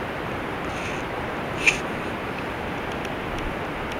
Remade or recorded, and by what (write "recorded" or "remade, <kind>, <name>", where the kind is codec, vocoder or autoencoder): recorded